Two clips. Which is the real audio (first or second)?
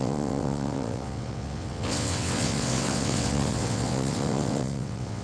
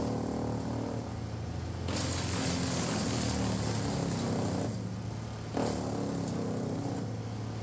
second